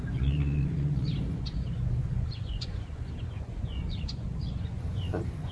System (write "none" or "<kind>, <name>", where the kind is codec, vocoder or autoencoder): vocoder, Vocos